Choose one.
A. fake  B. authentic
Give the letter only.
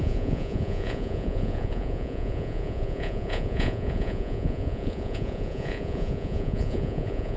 A